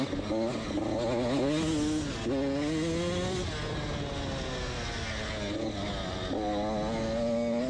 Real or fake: real